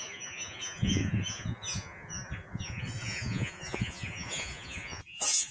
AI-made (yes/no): yes